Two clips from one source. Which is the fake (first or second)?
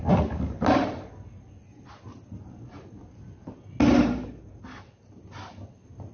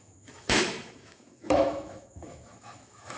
second